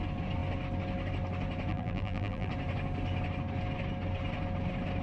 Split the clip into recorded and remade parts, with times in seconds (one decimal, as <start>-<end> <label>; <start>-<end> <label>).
0.0-1.7 recorded; 1.7-2.5 remade; 2.5-5.0 recorded